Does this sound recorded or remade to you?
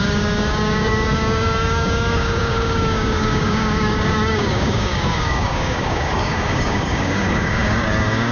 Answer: remade